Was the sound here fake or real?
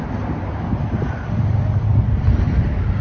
fake